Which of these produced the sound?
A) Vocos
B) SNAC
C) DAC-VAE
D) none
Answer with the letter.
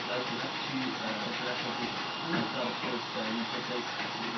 D